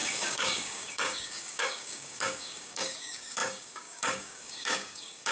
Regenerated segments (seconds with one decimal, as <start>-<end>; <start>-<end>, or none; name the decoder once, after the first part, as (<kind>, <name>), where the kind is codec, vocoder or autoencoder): 0.0-5.3 (codec, DAC)